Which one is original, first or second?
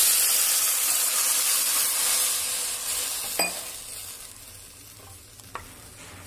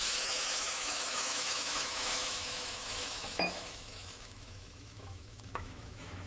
first